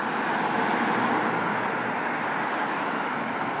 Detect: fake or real real